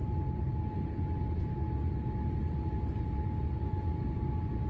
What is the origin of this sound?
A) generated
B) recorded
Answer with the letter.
B